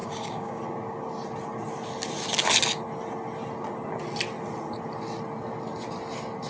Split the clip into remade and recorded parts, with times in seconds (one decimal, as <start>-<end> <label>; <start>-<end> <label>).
0.0-0.6 remade; 0.6-6.5 recorded